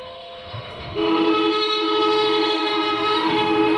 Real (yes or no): no